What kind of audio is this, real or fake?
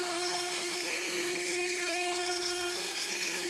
fake